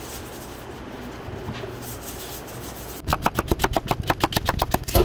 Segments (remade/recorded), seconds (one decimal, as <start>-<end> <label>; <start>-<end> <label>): 0.0-5.0 recorded